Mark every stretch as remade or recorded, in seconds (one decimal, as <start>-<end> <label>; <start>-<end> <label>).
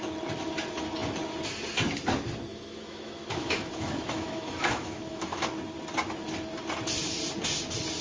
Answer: 0.0-2.5 recorded; 2.5-5.4 remade; 5.4-8.0 recorded